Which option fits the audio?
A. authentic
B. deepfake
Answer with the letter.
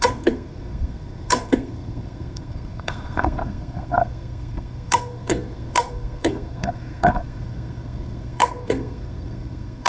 B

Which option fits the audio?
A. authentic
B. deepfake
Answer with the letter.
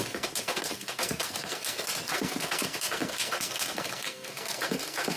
B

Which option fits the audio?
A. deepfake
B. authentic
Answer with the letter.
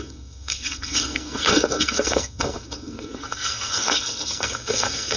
A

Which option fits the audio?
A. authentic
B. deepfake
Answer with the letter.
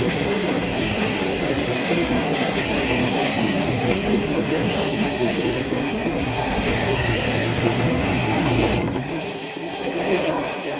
B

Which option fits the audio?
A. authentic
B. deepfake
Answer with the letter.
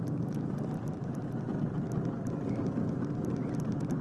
A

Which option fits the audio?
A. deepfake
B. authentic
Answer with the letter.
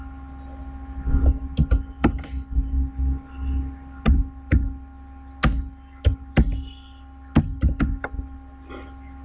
B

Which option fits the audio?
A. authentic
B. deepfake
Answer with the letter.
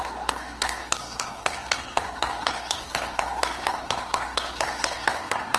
B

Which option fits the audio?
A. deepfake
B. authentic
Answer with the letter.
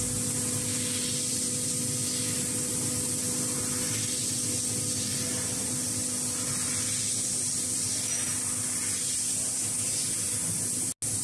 B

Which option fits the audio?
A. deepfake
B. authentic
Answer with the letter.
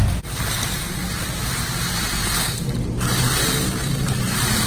B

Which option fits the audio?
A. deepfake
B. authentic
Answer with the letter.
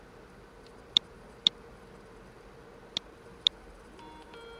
B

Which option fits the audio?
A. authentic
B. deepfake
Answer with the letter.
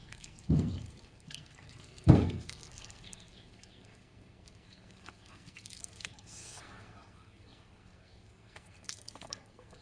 B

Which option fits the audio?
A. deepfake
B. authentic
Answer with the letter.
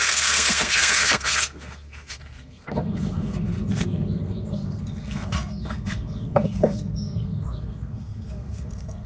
A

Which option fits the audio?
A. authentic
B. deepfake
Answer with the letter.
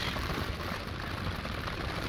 A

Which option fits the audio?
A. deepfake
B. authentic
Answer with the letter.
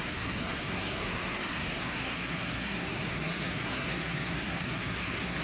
A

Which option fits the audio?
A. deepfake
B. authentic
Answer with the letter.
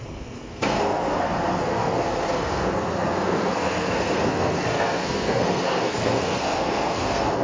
A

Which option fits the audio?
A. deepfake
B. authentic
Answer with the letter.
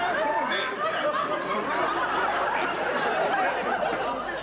B